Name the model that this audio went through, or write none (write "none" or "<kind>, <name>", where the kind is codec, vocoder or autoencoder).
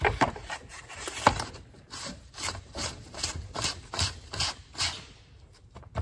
vocoder, BigVGAN v2